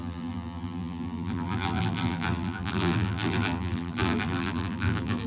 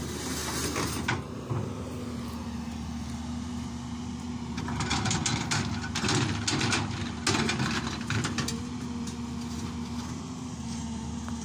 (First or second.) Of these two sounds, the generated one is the first